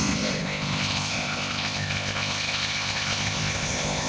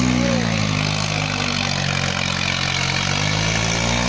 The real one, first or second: second